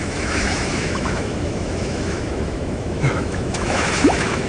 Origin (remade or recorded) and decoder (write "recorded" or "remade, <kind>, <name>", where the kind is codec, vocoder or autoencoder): remade, autoencoder, DAC-VAE